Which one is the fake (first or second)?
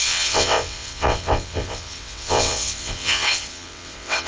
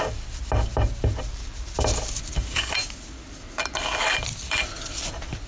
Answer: first